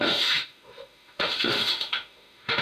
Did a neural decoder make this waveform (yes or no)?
yes